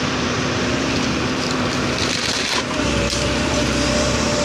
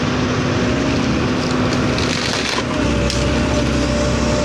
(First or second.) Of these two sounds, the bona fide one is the second